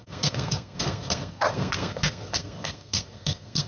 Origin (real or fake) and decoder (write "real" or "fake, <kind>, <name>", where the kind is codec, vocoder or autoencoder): fake, codec, SNAC